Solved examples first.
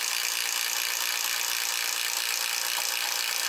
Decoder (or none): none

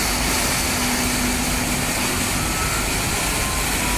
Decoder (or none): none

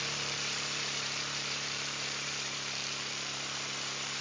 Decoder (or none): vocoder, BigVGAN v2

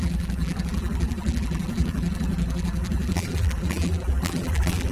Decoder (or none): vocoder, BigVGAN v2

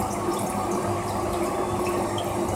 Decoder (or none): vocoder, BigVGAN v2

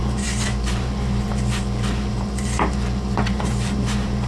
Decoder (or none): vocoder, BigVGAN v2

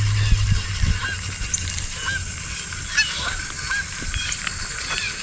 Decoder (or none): none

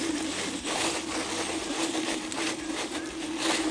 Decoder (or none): none